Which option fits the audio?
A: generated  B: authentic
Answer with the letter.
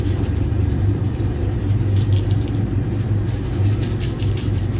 A